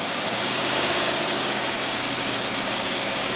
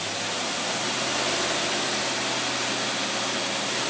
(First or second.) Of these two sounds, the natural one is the second